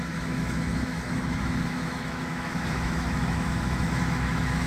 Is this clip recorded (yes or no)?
no